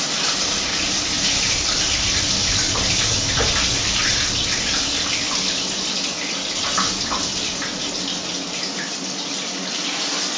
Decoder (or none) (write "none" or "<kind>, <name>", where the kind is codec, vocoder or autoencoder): none